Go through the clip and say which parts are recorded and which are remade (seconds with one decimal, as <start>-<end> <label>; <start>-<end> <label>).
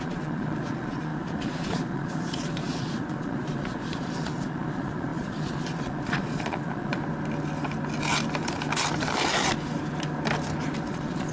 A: 0.0-7.0 remade; 7.0-10.9 recorded; 10.9-11.3 remade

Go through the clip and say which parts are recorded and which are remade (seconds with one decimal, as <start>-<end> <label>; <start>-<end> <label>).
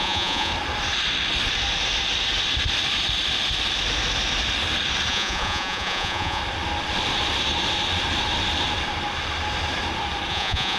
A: 0.0-0.5 remade; 0.5-5.1 recorded; 5.1-6.4 remade; 6.4-10.3 recorded; 10.3-10.8 remade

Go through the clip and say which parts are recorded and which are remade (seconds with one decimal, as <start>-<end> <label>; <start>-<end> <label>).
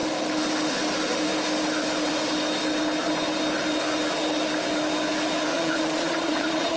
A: 0.0-5.5 recorded; 5.5-6.8 remade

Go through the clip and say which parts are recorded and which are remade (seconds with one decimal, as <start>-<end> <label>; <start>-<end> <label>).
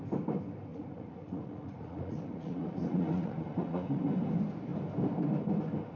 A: 0.0-0.7 recorded; 0.7-4.0 remade; 4.0-6.0 recorded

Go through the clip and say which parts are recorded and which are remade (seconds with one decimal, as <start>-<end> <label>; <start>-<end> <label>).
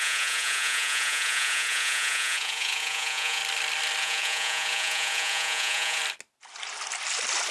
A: 0.0-3.4 remade; 3.4-4.0 recorded; 4.0-6.0 remade; 6.0-7.5 recorded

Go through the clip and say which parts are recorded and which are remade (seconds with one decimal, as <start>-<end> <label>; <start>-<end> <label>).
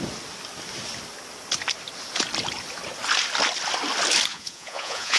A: 0.0-4.3 recorded; 4.3-5.2 remade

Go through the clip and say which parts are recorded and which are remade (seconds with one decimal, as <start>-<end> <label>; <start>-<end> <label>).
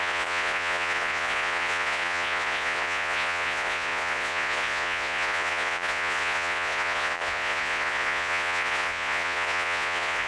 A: 0.0-10.3 remade